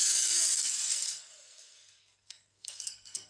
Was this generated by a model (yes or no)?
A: yes